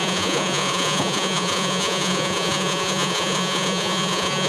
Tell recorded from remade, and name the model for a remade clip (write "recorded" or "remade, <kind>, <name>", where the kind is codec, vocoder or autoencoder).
remade, vocoder, Vocos